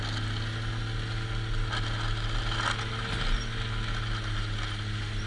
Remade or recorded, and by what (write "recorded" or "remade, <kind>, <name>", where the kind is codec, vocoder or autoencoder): recorded